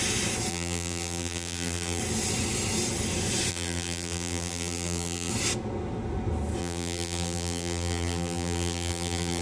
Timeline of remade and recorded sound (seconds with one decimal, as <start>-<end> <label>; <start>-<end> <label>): 0.0-0.5 recorded; 0.5-2.0 remade; 2.0-3.5 recorded; 3.5-5.3 remade; 5.3-6.6 recorded; 6.6-9.4 remade